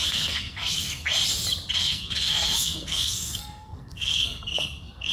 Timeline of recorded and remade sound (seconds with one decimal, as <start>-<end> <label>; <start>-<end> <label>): 0.0-1.1 remade; 1.1-1.8 recorded; 1.8-5.1 remade

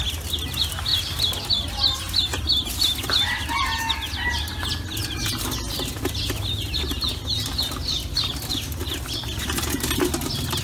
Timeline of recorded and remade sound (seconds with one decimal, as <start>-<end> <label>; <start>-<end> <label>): 0.0-10.6 recorded

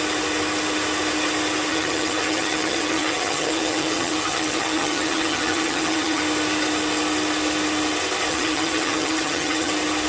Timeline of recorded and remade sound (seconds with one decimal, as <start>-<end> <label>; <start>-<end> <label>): 0.0-1.7 recorded; 1.7-6.2 remade; 6.2-8.3 recorded; 8.3-9.7 remade; 9.7-10.1 recorded

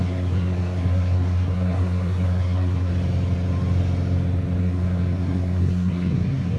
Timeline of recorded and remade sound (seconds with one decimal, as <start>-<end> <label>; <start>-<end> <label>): 0.0-2.9 remade; 2.9-4.6 recorded; 4.6-6.6 remade

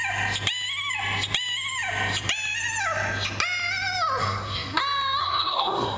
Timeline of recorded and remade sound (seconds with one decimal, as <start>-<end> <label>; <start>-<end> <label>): 0.0-4.2 recorded; 4.2-4.8 remade; 4.8-5.2 recorded; 5.2-6.0 remade

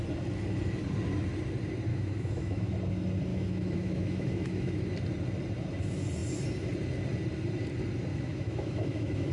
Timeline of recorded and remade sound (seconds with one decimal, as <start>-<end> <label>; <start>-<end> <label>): 0.0-1.9 recorded; 1.9-2.7 remade; 2.7-3.3 recorded; 3.3-4.8 remade; 4.8-8.1 recorded; 8.1-9.3 remade

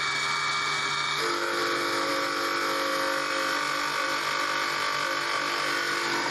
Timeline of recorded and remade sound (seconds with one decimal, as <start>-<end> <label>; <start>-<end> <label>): 0.0-6.3 recorded

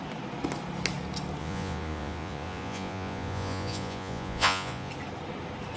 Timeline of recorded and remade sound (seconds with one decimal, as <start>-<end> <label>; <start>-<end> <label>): 0.0-1.4 recorded; 1.4-4.9 remade; 4.9-5.8 recorded